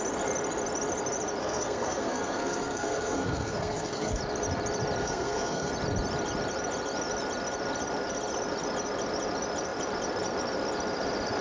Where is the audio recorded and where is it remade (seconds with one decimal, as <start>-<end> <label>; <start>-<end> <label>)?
0.0-1.4 recorded; 1.4-4.2 remade; 4.2-5.0 recorded; 5.0-5.7 remade; 5.7-11.4 recorded